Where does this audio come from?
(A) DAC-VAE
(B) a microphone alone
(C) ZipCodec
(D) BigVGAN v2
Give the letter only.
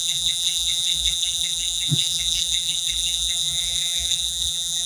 D